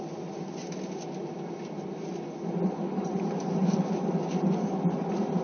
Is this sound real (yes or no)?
yes